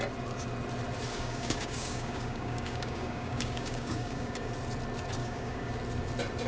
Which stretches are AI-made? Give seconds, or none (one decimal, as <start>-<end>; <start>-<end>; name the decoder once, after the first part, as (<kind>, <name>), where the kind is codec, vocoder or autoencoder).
1.1-4.5 (codec, DAC); 5.2-5.7